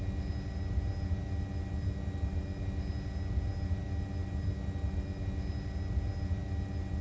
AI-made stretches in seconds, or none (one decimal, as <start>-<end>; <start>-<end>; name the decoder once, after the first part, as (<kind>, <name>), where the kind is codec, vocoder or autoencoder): none